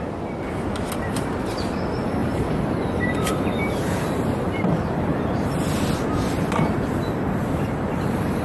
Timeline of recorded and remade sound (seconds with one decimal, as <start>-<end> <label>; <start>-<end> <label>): 0.0-2.2 recorded; 2.2-5.6 remade; 5.6-7.4 recorded; 7.4-8.4 remade